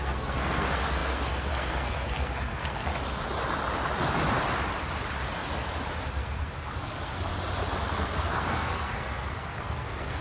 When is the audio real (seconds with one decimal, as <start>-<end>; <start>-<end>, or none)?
2.9-6.1; 7.3-7.8